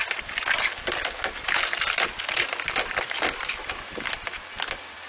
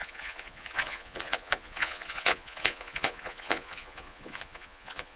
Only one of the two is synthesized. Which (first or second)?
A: second